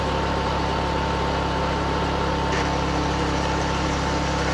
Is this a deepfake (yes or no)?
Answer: yes